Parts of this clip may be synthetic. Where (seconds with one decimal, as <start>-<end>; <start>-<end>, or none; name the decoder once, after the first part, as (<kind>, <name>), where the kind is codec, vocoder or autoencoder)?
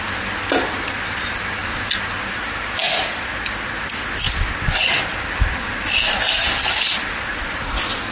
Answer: none